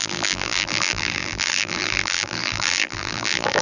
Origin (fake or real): fake